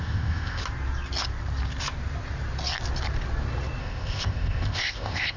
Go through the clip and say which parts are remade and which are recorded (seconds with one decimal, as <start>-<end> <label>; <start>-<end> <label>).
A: 0.0-0.6 remade; 0.6-3.8 recorded; 3.8-5.4 remade